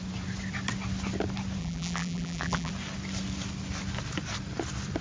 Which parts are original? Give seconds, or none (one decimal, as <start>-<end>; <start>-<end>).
0.0-1.6; 2.7-5.0